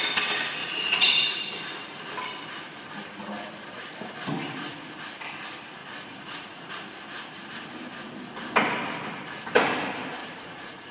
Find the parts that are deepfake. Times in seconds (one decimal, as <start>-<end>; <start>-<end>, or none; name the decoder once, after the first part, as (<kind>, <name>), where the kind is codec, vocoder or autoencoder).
0.6-1.4 (vocoder, Vocos); 5.8-6.7; 10.2-10.9